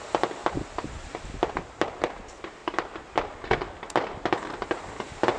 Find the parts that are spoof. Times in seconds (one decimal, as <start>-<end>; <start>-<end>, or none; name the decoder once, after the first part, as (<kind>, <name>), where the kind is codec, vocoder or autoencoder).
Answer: 0.0-0.4 (vocoder, BigVGAN v2); 1.0-2.6; 4.3-5.4